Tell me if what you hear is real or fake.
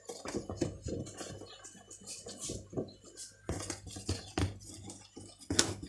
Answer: real